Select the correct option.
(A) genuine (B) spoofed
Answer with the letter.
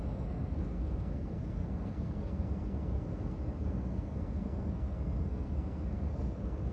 B